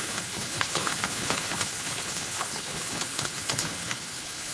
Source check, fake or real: fake